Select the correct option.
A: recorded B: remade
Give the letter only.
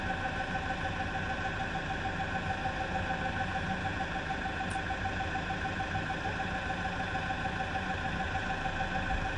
A